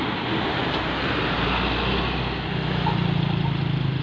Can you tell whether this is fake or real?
real